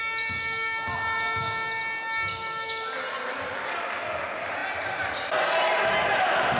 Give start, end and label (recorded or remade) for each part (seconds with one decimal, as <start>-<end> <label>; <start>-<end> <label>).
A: 0.0-6.6 recorded